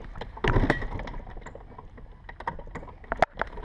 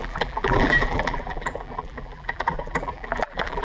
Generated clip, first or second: second